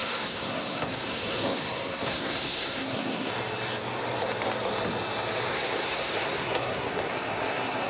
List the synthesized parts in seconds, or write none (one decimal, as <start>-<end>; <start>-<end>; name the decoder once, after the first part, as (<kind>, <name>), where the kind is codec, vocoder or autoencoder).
0.0-3.3 (codec, SNAC); 5.5-7.9